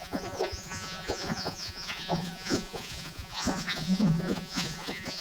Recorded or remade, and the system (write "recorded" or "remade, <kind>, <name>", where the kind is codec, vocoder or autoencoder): remade, vocoder, Vocos